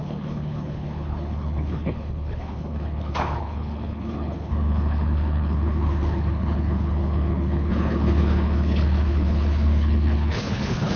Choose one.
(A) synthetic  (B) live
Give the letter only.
A